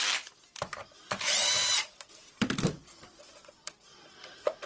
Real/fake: fake